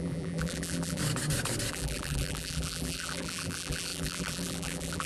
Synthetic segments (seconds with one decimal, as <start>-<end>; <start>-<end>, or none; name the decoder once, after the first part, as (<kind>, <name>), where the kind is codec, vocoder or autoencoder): 0.0-1.0 (vocoder, BigVGAN v2); 1.7-5.1